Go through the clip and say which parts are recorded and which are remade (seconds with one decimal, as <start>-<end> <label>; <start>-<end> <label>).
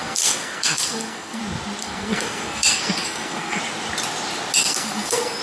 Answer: 0.0-1.4 remade; 1.4-1.8 recorded; 1.8-3.6 remade; 3.6-4.6 recorded; 4.6-5.4 remade